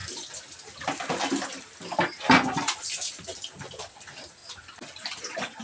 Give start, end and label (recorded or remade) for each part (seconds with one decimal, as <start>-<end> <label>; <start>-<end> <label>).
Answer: 0.0-1.4 remade; 1.4-5.6 recorded